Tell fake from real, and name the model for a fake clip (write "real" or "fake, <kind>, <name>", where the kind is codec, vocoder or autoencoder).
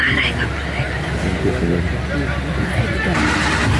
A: real